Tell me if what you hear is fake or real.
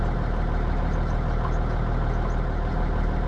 real